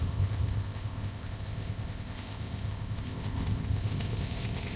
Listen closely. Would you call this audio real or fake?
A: fake